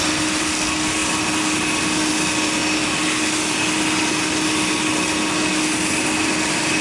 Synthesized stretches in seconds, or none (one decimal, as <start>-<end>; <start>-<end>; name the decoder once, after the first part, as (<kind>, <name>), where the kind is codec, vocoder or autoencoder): none